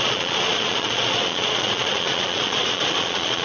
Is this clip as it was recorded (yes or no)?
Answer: no